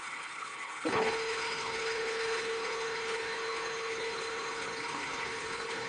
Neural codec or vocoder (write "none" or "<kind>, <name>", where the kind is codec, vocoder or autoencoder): codec, HILCodec